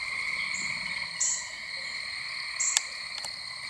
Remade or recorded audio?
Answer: recorded